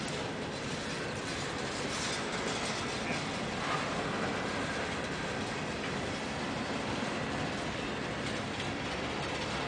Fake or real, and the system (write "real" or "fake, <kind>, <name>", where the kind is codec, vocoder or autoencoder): real